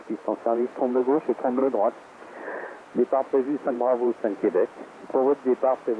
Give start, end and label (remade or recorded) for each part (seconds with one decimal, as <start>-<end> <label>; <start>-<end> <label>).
0.0-5.1 remade; 5.1-6.0 recorded